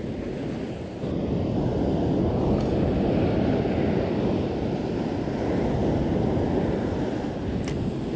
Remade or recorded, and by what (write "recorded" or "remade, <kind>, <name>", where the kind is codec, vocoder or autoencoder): recorded